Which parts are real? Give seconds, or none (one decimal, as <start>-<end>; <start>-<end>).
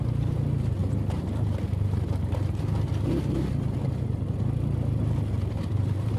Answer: 0.0-6.2